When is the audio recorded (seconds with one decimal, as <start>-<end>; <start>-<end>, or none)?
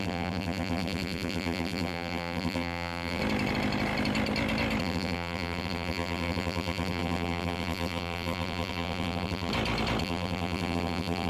3.2-4.8; 9.5-10.0